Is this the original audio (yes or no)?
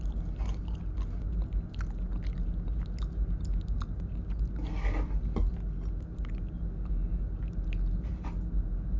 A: yes